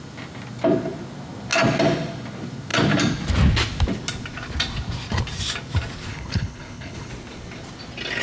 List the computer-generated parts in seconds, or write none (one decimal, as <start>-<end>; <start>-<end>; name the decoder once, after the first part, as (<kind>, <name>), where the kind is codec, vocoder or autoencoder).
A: 6.1-7.1 (codec, HILCodec)